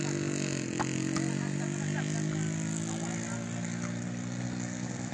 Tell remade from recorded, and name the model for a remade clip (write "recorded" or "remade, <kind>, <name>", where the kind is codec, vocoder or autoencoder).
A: recorded